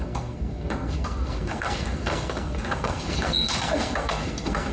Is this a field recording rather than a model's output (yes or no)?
no